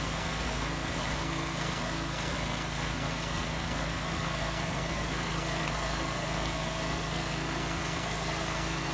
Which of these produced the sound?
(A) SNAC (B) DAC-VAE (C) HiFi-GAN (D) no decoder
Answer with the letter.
A